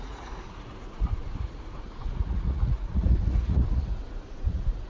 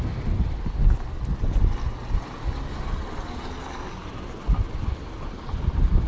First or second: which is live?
second